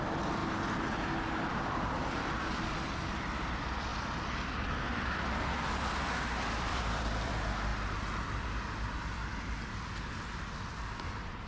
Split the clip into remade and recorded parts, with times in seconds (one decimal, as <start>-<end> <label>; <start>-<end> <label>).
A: 0.0-0.4 remade; 0.4-0.9 recorded; 0.9-3.9 remade; 3.9-6.5 recorded; 6.5-7.7 remade; 7.7-11.5 recorded